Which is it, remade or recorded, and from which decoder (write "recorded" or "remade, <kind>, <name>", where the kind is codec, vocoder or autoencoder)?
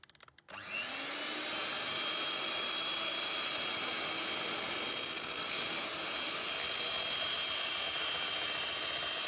recorded